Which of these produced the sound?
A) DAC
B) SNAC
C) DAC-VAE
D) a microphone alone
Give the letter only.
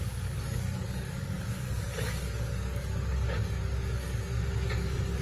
A